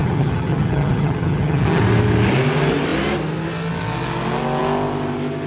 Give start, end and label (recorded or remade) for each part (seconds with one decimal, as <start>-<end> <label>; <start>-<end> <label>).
0.0-1.8 remade; 1.8-5.5 recorded